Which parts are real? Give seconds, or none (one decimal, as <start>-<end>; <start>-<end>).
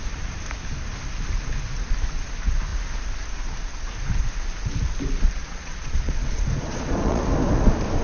0.0-5.4; 7.2-8.0